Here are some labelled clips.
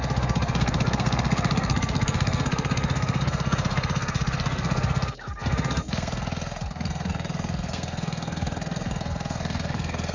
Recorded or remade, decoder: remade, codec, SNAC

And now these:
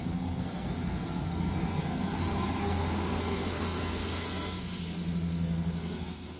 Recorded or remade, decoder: remade, codec, SNAC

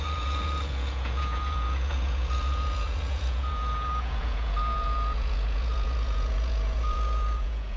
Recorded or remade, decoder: remade, vocoder, Vocos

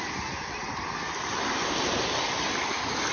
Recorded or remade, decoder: recorded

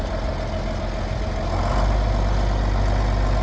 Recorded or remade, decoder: recorded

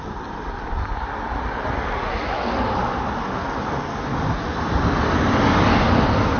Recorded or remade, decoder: recorded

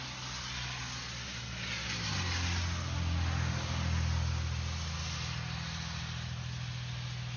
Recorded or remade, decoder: recorded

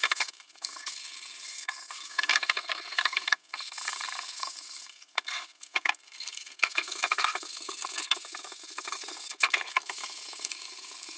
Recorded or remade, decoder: remade, codec, SNAC